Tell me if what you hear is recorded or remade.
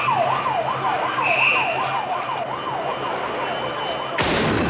recorded